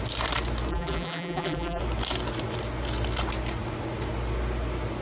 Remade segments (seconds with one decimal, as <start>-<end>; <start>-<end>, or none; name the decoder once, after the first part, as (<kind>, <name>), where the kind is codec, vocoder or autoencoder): 0.7-1.8 (vocoder, BigVGAN v2)